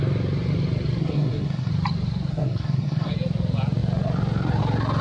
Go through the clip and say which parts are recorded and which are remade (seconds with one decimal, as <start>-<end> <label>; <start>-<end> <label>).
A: 0.0-1.0 recorded; 1.0-1.7 remade; 1.7-2.3 recorded; 2.3-3.1 remade; 3.1-5.0 recorded